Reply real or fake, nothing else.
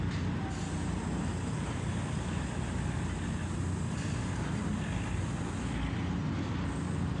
real